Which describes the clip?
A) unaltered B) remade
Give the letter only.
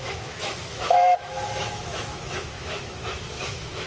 B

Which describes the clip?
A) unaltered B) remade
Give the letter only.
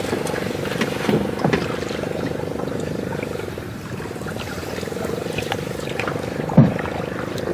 A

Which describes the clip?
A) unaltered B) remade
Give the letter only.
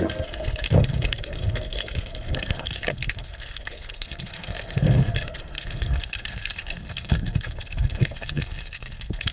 B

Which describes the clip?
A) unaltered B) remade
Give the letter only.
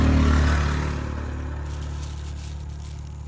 A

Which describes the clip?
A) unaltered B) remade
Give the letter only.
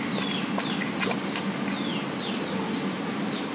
A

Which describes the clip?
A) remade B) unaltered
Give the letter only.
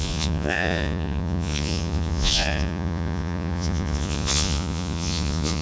A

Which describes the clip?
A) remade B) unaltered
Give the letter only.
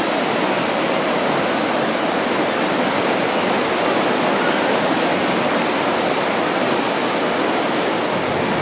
B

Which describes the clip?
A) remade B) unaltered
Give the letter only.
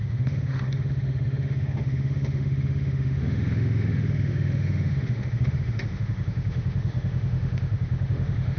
A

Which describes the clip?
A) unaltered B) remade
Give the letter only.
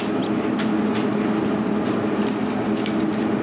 A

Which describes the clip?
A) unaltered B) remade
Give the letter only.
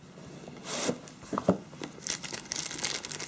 A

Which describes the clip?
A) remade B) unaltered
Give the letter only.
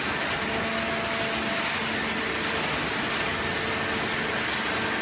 B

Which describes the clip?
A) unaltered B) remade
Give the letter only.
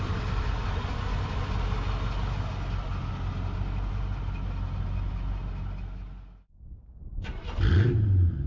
A